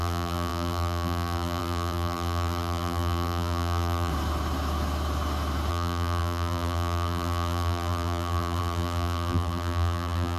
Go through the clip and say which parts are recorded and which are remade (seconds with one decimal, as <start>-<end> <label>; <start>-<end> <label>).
0.0-4.1 remade; 4.1-5.7 recorded; 5.7-10.4 remade

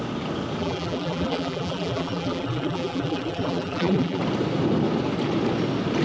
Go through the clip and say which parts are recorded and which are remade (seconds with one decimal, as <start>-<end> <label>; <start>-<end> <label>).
0.0-0.6 recorded; 0.6-4.2 remade; 4.2-6.0 recorded

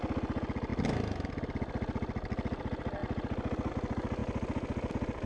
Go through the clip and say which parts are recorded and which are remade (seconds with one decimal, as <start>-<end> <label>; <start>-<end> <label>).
0.0-5.3 recorded

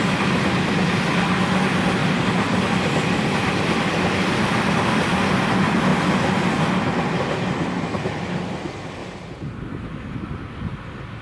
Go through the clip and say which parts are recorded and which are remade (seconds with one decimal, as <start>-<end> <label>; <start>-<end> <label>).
0.0-11.2 recorded